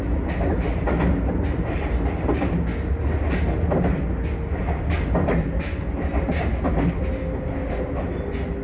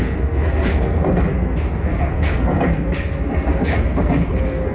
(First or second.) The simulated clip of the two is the second